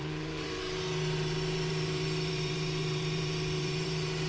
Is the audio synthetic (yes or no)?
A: yes